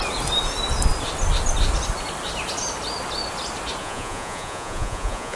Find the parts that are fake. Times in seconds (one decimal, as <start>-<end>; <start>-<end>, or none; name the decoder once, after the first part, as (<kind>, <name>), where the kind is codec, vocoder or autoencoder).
3.8-5.4 (vocoder, Vocos)